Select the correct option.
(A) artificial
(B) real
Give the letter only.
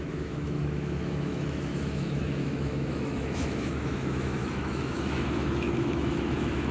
A